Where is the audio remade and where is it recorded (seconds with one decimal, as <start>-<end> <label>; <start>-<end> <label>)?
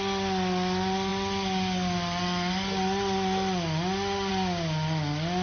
0.0-5.4 recorded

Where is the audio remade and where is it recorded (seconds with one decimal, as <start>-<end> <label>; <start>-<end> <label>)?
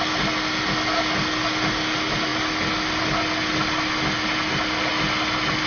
0.0-5.7 recorded